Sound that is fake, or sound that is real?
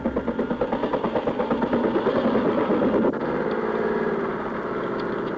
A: real